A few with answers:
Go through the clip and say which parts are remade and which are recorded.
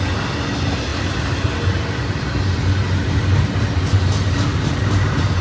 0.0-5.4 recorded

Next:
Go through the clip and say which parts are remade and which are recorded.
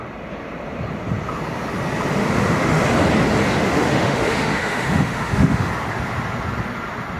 0.0-2.2 recorded; 2.2-2.8 remade; 2.8-3.6 recorded; 3.6-5.7 remade; 5.7-7.2 recorded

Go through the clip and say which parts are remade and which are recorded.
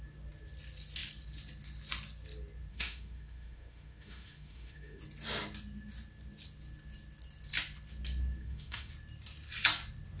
0.0-2.7 recorded; 2.7-5.0 remade; 5.0-8.4 recorded; 8.4-8.9 remade; 8.9-10.2 recorded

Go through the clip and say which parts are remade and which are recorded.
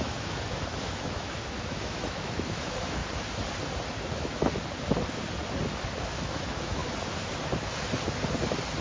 0.0-3.0 remade; 3.0-4.1 recorded; 4.1-4.5 remade; 4.5-6.1 recorded; 6.1-6.8 remade; 6.8-8.8 recorded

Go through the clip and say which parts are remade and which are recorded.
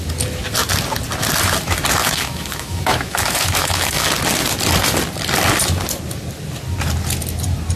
0.0-2.0 recorded; 2.0-4.1 remade; 4.1-7.8 recorded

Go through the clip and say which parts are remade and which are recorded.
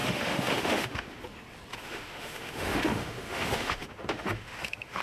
0.0-1.2 remade; 1.2-1.7 recorded; 1.7-5.0 remade